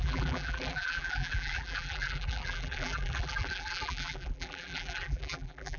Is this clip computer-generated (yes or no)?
yes